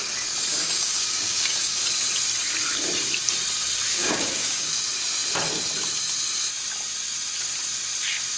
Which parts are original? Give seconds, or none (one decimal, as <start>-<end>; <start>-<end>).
0.0-0.5; 1.8-3.9; 4.7-8.4